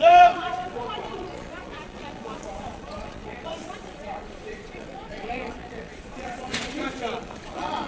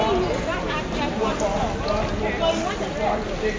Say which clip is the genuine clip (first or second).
second